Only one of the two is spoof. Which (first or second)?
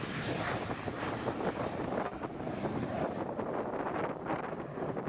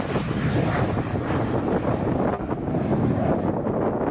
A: first